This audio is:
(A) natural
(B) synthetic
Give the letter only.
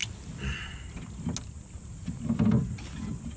A